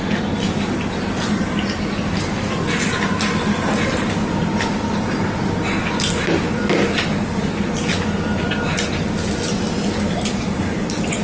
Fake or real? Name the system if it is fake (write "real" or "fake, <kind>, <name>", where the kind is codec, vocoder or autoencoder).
real